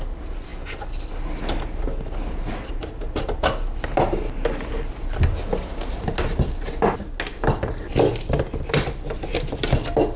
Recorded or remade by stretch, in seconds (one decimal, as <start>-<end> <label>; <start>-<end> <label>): 0.0-10.2 recorded